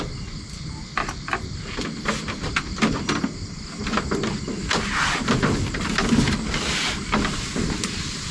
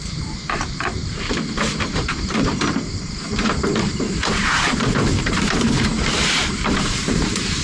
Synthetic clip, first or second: second